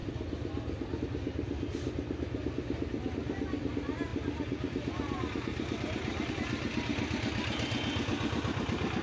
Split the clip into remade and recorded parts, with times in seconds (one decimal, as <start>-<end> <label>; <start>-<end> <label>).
0.0-9.0 recorded